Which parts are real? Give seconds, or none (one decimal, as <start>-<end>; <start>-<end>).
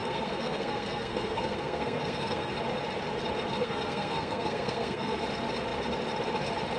2.5-3.6; 5.2-6.8